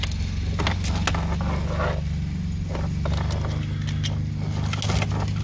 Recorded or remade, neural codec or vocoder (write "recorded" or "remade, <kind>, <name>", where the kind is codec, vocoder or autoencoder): recorded